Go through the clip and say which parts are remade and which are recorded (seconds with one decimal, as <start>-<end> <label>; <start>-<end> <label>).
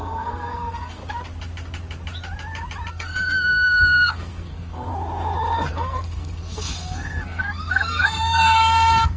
0.0-1.0 remade; 1.0-2.9 recorded; 2.9-4.9 remade; 4.9-5.7 recorded; 5.7-9.2 remade